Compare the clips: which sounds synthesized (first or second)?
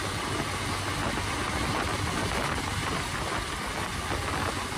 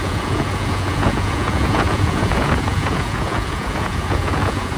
second